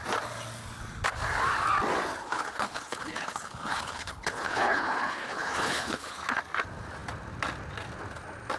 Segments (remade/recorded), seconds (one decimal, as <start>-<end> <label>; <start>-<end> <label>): 0.0-2.2 recorded; 2.2-6.4 remade; 6.4-8.6 recorded